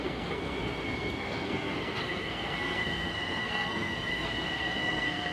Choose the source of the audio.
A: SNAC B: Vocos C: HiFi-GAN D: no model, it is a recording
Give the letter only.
A